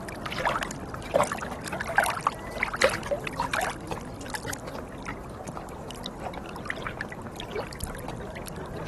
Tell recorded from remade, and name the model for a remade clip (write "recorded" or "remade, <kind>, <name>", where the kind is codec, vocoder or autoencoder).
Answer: recorded